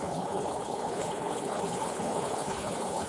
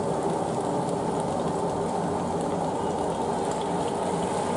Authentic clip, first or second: second